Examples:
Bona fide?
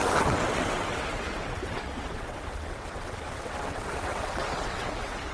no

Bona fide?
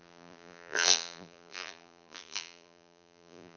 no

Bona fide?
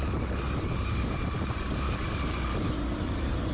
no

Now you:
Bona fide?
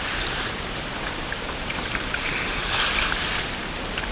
no